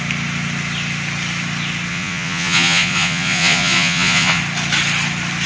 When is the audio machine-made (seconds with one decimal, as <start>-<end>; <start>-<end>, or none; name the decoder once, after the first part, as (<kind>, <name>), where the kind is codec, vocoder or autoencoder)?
1.9-4.4 (vocoder, Vocos)